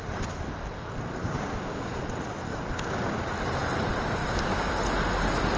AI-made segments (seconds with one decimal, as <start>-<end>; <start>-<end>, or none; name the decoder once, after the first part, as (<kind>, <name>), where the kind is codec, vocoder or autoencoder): 1.2-1.9 (codec, DAC); 2.5-3.1; 4.2-4.7